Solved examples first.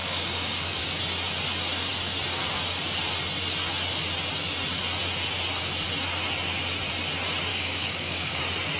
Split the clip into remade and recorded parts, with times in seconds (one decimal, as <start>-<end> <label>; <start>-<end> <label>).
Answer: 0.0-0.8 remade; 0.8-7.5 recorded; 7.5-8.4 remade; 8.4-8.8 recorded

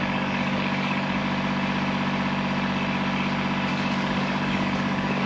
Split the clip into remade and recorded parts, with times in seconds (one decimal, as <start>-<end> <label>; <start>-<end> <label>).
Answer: 0.0-1.2 remade; 1.2-3.7 recorded; 3.7-5.3 remade

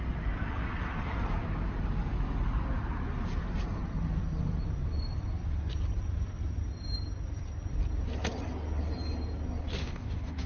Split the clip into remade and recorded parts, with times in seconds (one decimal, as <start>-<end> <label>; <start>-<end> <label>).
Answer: 0.0-9.8 recorded; 9.8-10.5 remade